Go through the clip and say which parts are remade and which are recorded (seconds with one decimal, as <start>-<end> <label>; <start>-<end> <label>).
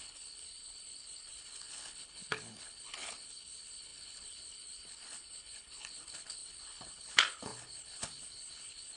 0.0-9.0 remade